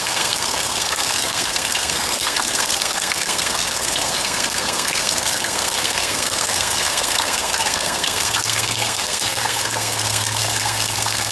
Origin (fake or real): fake